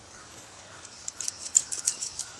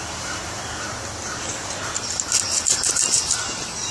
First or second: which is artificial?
first